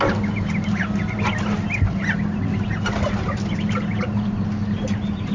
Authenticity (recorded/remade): recorded